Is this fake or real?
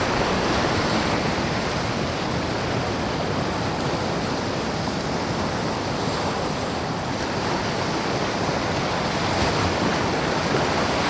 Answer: real